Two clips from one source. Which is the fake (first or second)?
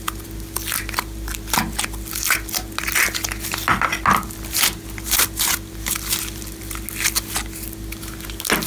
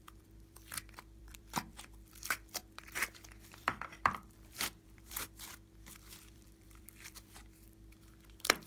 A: second